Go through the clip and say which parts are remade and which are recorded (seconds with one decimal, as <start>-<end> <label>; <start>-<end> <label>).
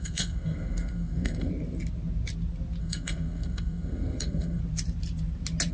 0.0-1.5 remade; 1.5-2.8 recorded; 2.8-4.6 remade; 4.6-5.7 recorded